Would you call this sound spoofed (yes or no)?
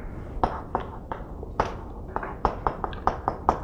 no